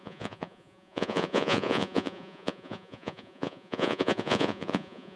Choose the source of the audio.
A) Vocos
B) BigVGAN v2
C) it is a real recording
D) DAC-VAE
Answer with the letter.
A